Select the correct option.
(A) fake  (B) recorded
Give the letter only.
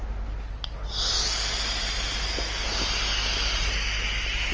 B